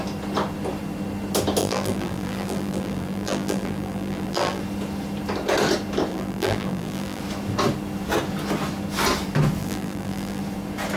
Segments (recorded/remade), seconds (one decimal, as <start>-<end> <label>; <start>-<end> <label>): 0.0-1.6 recorded; 1.6-4.6 remade; 4.6-6.1 recorded; 6.1-7.2 remade; 7.2-9.6 recorded; 9.6-10.4 remade; 10.4-11.0 recorded